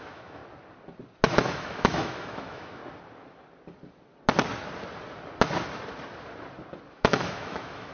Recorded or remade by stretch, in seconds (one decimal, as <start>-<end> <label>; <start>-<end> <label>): 0.0-0.4 remade; 0.4-1.3 recorded; 1.3-2.8 remade; 2.8-6.9 recorded; 6.9-7.9 remade